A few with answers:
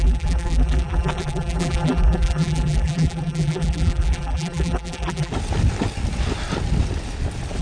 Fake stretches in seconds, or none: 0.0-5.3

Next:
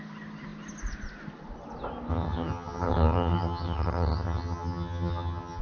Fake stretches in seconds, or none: 2.1-5.6

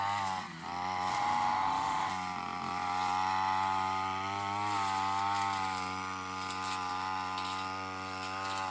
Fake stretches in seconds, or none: 1.1-2.1

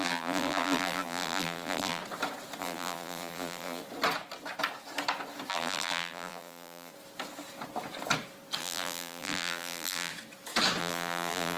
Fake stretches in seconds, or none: 0.0-2.0; 2.6-3.8; 5.5-6.9; 8.6-10.1; 10.8-11.6

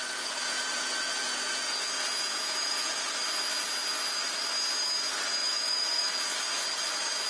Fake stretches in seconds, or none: 0.0-3.0; 5.4-6.0